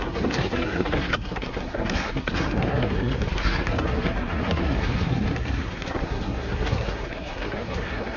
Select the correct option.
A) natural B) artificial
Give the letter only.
B